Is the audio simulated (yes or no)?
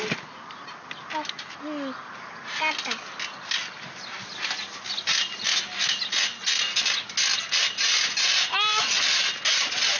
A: no